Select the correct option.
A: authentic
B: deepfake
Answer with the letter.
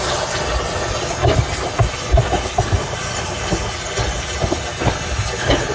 A